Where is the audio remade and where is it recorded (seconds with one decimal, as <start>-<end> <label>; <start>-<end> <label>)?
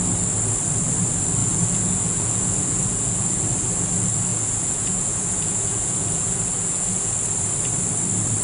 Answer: 0.0-1.4 recorded; 1.4-3.4 remade; 3.4-4.3 recorded; 4.3-7.1 remade; 7.1-8.4 recorded